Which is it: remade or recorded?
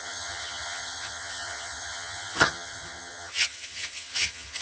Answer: remade